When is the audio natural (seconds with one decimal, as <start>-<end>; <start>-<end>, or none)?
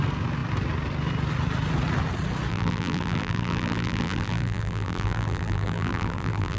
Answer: 0.0-2.5